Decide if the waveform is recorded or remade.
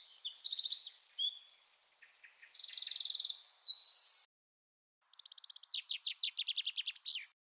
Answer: recorded